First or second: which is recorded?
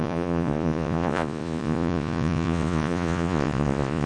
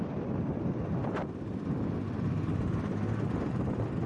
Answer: second